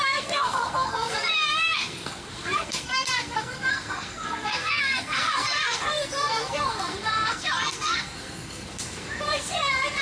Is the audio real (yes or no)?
no